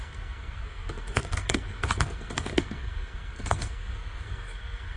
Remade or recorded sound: remade